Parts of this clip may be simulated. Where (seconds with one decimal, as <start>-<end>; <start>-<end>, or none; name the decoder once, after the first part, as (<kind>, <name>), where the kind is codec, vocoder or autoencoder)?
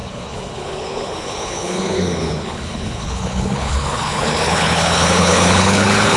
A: 0.0-6.2 (codec, HILCodec)